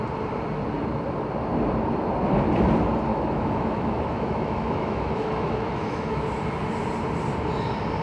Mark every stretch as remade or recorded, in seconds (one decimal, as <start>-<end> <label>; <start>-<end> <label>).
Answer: 0.0-3.1 recorded; 3.1-6.3 remade; 6.3-8.0 recorded